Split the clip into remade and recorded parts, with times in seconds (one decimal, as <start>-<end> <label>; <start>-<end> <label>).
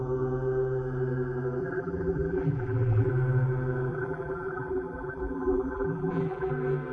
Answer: 0.0-1.6 recorded; 1.6-3.1 remade; 3.1-3.9 recorded; 3.9-6.5 remade; 6.5-6.9 recorded